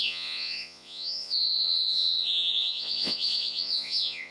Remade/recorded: remade